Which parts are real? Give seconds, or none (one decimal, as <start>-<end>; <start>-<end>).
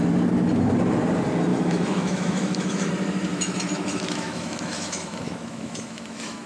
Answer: 0.0-1.5; 2.9-3.3